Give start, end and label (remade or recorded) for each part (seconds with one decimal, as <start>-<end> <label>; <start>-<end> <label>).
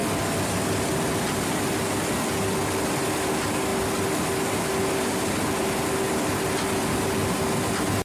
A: 0.0-8.0 recorded